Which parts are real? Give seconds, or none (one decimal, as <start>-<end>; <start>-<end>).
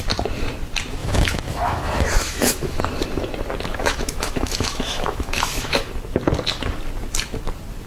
0.0-1.0; 2.8-3.7; 5.9-7.9